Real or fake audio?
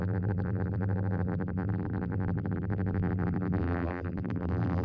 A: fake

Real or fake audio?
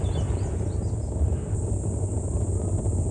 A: real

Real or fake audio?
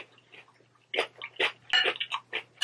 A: real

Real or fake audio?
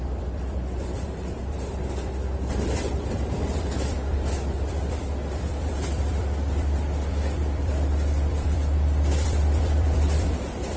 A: fake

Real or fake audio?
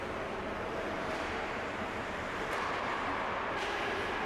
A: fake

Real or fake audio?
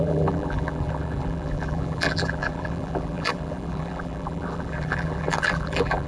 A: fake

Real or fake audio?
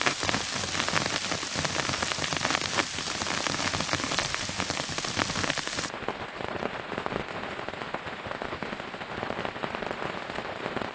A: real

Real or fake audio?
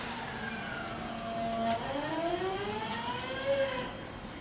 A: real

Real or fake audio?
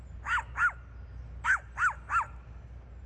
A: real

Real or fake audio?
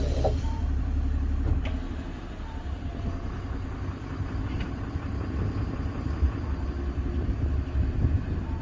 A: fake